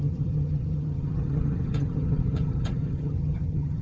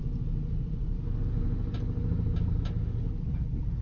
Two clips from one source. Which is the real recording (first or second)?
second